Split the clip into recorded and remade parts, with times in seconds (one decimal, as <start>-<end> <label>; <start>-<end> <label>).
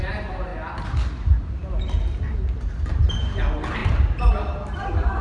0.0-0.5 remade; 0.5-2.9 recorded; 2.9-5.2 remade